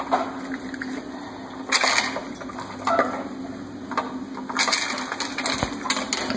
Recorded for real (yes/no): yes